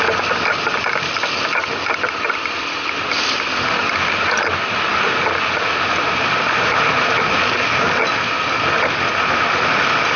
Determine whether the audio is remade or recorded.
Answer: recorded